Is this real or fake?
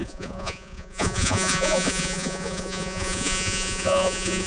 fake